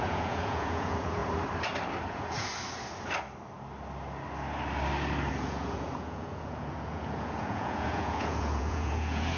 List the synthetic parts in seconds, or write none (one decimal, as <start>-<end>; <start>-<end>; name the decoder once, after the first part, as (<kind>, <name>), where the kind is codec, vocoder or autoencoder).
0.0-1.2 (vocoder, Vocos); 2.1-2.5; 5.3-9.4